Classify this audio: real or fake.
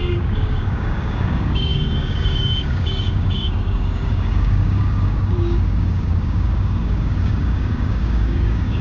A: fake